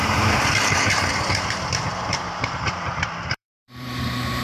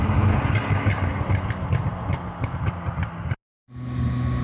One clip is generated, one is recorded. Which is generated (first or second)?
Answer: first